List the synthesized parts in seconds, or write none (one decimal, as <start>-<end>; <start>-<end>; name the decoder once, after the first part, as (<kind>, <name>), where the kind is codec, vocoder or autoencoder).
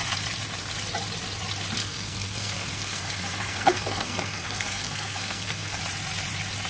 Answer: 1.8-5.8 (codec, SNAC)